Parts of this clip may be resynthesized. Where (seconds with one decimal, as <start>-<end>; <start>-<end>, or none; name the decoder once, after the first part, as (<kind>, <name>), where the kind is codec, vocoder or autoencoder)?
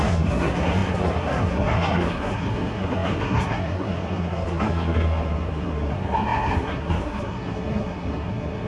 0.0-8.7 (codec, SNAC)